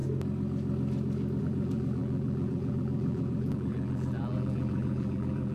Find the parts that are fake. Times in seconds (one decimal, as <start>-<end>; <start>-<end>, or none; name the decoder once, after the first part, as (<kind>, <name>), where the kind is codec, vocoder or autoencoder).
1.4-5.5 (vocoder, BigVGAN v2)